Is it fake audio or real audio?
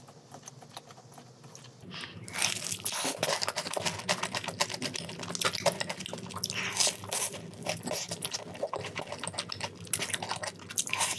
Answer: real